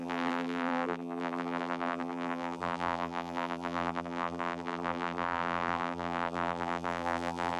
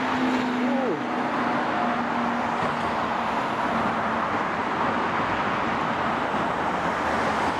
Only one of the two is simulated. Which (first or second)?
first